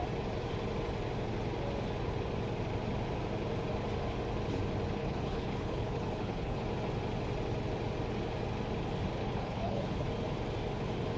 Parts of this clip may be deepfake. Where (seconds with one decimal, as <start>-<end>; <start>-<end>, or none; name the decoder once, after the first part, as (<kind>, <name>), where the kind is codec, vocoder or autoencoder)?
5.0-6.6 (codec, HILCodec); 9.2-10.1